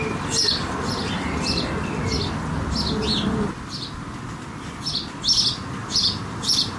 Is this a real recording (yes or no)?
yes